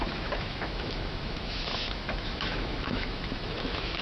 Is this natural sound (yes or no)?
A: no